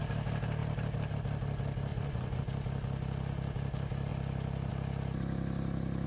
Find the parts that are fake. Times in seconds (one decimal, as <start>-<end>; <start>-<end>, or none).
1.9-2.4